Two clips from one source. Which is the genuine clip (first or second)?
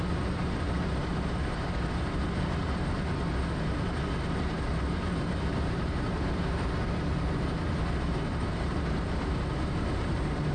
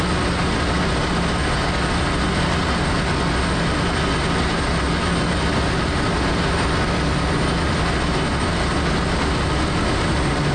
second